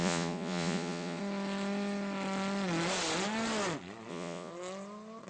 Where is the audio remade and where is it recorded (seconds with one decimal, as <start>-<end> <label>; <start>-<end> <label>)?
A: 0.0-1.2 remade; 1.2-4.1 recorded; 4.1-4.5 remade; 4.5-5.3 recorded